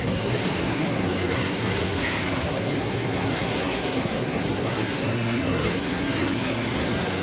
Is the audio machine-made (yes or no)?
yes